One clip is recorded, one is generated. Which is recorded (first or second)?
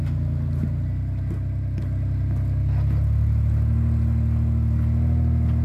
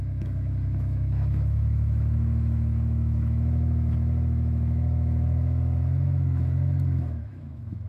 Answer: first